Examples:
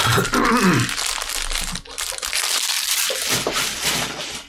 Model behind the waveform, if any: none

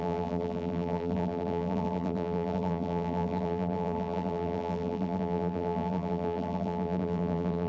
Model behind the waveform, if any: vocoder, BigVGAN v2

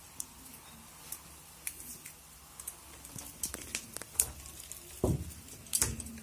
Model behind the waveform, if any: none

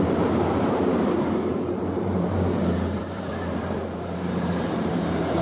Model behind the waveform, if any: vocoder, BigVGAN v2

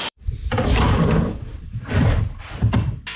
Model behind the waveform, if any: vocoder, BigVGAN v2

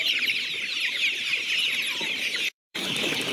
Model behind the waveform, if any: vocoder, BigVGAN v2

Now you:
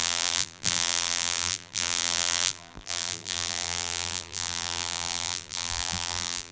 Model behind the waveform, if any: vocoder, BigVGAN v2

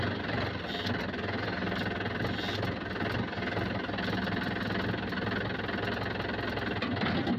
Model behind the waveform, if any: none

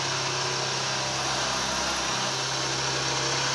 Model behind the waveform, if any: none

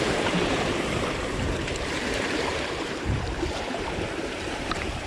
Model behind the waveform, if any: vocoder, BigVGAN v2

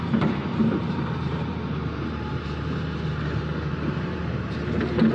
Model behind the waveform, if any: vocoder, BigVGAN v2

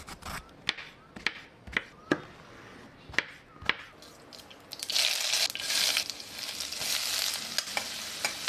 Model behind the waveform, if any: none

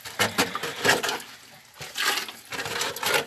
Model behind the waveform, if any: none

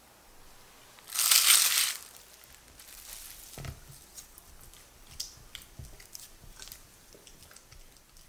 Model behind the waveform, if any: none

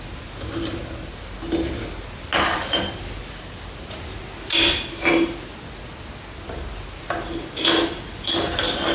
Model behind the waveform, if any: none